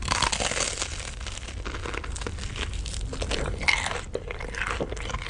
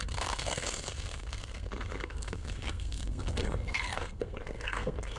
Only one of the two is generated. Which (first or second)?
second